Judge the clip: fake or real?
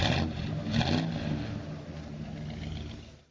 real